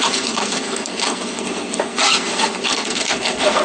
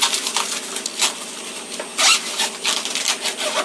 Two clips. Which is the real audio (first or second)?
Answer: second